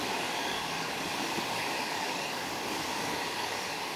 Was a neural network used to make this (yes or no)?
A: yes